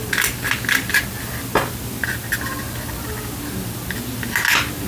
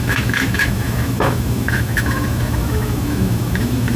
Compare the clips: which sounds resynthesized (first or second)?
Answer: second